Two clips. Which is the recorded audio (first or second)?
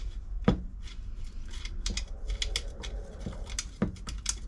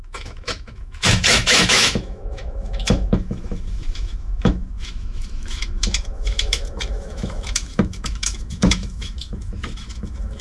first